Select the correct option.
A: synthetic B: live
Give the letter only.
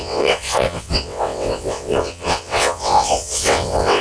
A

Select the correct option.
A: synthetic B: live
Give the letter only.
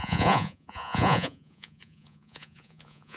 A